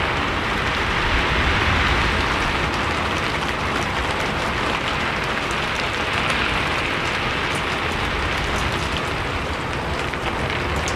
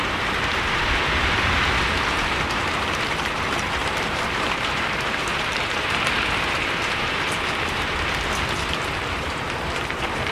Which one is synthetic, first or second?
second